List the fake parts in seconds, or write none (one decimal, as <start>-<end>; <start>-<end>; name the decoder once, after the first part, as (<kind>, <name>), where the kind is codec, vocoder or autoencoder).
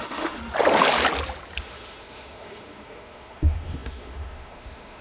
0.0-0.4 (autoencoder, DAC-VAE); 1.6-5.0